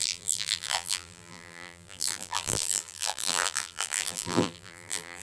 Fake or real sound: fake